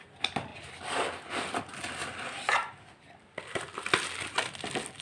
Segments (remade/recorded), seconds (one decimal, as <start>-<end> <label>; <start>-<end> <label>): 0.0-5.0 recorded